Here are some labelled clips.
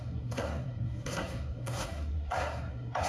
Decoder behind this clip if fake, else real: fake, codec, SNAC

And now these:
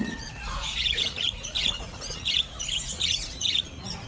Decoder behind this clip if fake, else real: fake, vocoder, Vocos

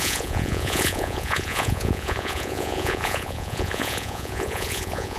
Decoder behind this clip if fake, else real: fake, vocoder, Vocos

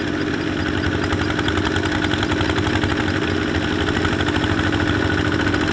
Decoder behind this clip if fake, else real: real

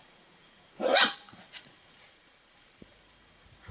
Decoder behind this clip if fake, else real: fake, vocoder, Vocos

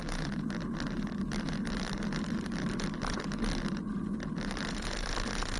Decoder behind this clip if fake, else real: fake, vocoder, BigVGAN v2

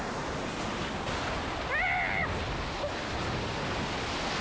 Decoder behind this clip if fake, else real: real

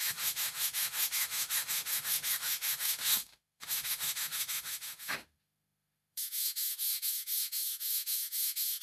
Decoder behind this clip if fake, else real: fake, autoencoder, DAC-VAE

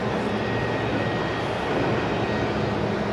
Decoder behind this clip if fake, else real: real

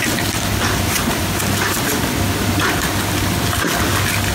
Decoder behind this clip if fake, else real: real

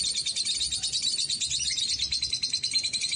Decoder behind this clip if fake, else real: real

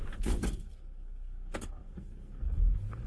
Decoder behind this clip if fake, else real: fake, codec, SNAC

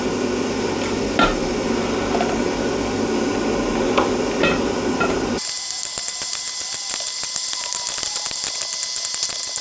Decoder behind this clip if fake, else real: real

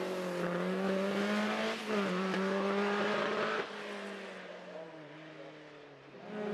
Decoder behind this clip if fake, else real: real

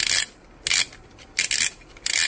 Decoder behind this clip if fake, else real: real